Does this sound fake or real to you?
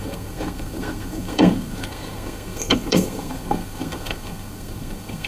fake